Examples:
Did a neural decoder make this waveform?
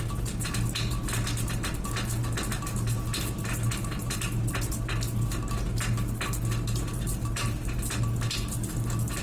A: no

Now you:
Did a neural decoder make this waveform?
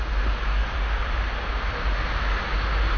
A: no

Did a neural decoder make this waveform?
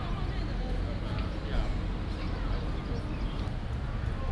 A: no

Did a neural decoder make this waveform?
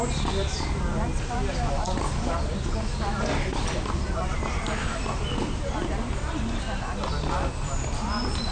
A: no